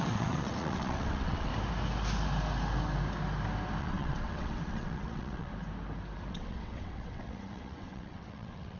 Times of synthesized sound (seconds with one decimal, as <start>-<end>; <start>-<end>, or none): 0.0-1.5; 3.8-5.5; 6.3-8.8